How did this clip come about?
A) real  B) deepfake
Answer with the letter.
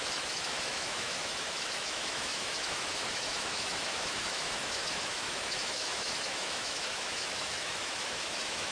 B